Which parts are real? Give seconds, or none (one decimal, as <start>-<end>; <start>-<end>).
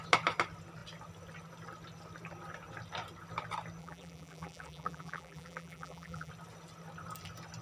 0.0-3.8; 6.3-7.6